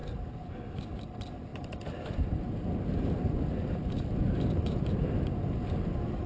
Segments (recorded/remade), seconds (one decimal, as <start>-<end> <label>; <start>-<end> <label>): 0.0-6.3 recorded